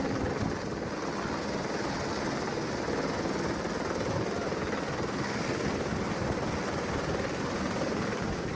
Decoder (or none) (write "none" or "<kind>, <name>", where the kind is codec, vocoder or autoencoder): none